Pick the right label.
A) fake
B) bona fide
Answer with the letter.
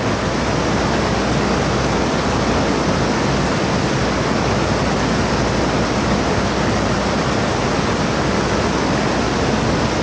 B